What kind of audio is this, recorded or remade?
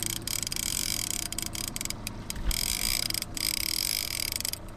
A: recorded